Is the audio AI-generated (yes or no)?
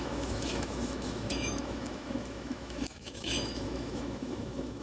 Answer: yes